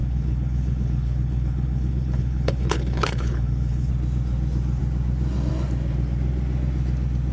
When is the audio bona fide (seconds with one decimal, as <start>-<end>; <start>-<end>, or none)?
3.9-7.3